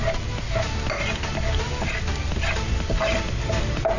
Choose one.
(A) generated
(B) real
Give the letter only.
B